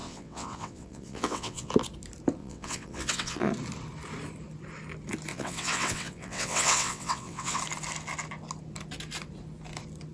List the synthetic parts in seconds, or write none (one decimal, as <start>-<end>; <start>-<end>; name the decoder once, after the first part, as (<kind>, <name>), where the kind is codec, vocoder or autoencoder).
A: 0.0-1.7 (vocoder, WaveNeXt); 2.4-3.5; 5.3-7.6